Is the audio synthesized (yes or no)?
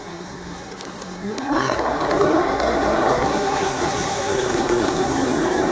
yes